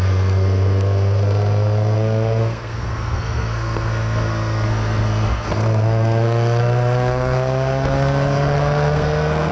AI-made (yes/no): yes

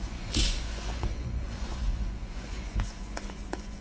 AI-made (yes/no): yes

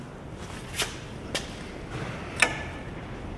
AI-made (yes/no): no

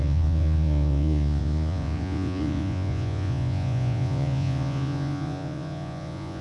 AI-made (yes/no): yes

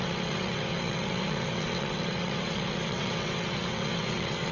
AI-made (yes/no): yes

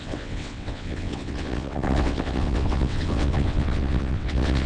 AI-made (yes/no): yes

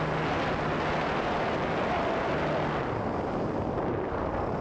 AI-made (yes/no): no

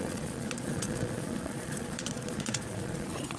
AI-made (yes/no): yes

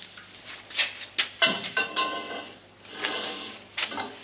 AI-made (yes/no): no